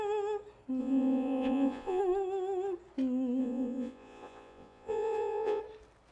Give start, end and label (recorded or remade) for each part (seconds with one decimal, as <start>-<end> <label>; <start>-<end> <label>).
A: 0.0-0.8 recorded; 0.8-2.0 remade; 2.0-3.4 recorded; 3.4-5.6 remade; 5.6-6.1 recorded